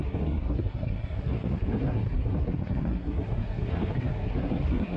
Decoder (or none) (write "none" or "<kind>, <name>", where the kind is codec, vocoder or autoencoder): codec, SNAC